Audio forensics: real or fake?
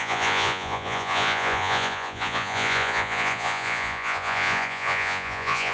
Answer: fake